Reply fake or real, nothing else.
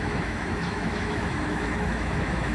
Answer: fake